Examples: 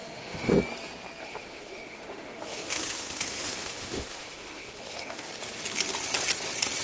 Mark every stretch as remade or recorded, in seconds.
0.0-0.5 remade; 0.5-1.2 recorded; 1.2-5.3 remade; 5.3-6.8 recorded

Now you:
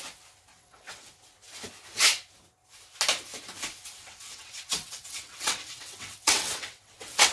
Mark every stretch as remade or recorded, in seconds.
0.0-0.5 recorded; 0.5-1.1 remade; 1.1-4.0 recorded; 4.0-7.3 remade

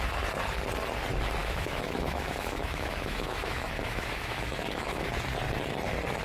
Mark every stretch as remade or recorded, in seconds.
0.0-1.4 recorded; 1.4-5.1 remade; 5.1-6.2 recorded

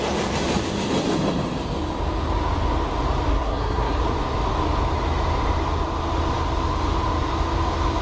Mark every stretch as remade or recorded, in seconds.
0.0-3.3 recorded; 3.3-4.0 remade; 4.0-8.0 recorded

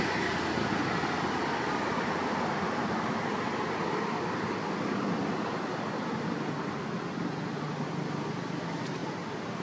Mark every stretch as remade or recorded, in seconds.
0.0-9.6 recorded

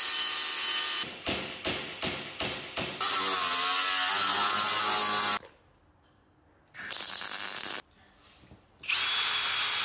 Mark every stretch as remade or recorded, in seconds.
0.0-9.8 recorded